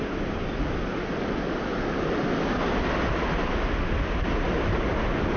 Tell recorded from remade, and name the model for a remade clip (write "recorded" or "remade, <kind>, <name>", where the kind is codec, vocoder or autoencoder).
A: recorded